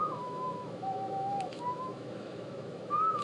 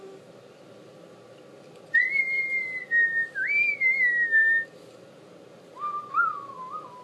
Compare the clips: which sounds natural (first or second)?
second